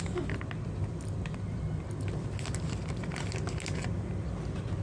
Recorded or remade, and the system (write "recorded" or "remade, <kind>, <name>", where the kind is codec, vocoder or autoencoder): recorded